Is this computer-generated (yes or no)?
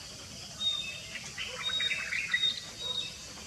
no